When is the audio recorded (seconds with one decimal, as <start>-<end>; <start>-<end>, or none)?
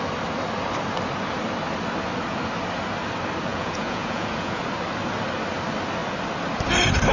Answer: 0.0-3.5; 4.6-7.1